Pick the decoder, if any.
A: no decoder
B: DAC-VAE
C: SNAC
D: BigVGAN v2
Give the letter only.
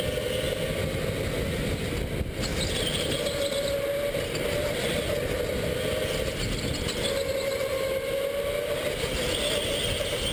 A